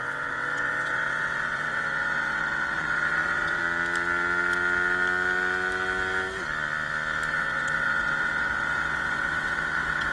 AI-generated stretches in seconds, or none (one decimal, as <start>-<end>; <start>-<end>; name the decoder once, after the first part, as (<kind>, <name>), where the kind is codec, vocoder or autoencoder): 0.0-3.6 (vocoder, WaveNeXt); 7.3-10.1